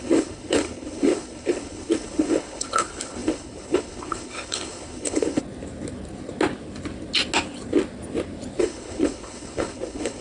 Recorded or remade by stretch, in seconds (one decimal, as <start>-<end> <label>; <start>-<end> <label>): 0.0-5.4 remade; 5.4-8.6 recorded; 8.6-10.2 remade